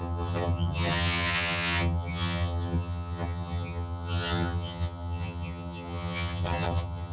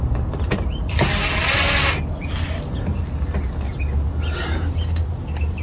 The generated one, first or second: first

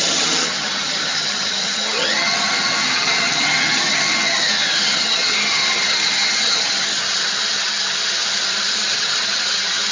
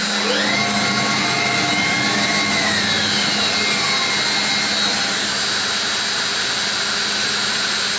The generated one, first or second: first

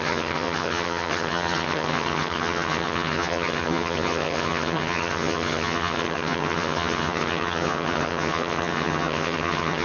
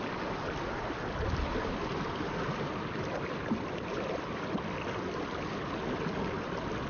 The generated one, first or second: first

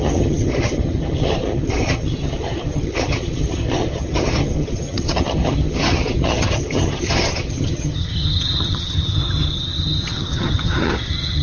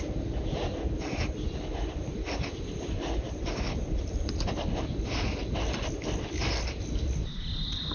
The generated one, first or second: first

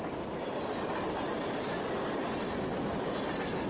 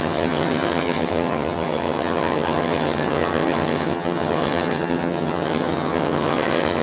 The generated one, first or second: second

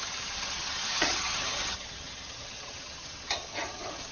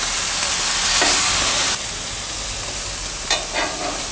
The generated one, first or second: first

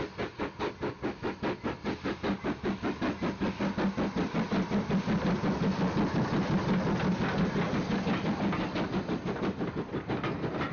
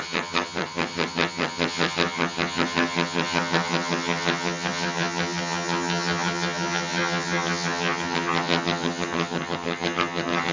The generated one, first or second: second